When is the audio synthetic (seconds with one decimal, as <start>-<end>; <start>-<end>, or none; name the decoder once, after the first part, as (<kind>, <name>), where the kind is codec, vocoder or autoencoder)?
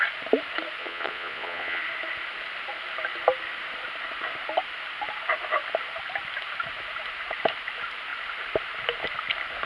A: 0.8-1.8 (vocoder, Vocos)